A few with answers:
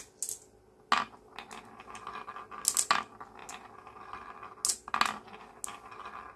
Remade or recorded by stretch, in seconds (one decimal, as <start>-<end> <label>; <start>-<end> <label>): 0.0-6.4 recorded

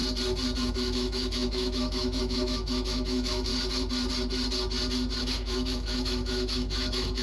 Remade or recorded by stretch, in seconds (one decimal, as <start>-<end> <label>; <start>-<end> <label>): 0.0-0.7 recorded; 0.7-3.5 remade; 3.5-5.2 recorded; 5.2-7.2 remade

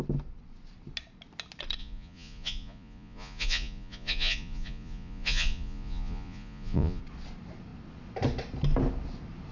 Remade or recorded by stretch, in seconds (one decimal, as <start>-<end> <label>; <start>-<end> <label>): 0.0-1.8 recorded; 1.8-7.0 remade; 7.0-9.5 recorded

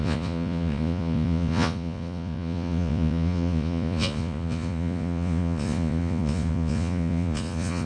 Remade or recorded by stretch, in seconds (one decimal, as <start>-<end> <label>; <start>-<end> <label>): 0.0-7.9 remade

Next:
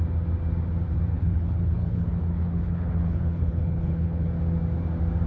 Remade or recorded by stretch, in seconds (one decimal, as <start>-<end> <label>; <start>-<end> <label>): 0.0-1.1 recorded; 1.1-4.3 remade; 4.3-5.3 recorded

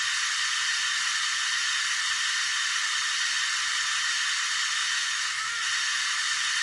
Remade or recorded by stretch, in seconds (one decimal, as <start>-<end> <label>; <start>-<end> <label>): 0.0-4.8 recorded; 4.8-5.5 remade; 5.5-6.6 recorded

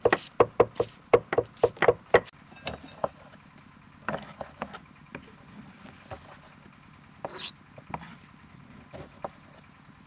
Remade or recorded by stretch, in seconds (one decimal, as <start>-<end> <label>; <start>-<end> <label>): 0.0-10.1 recorded

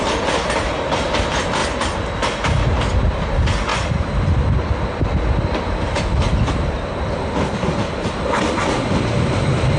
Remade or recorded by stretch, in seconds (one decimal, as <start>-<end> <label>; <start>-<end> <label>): 0.0-9.8 recorded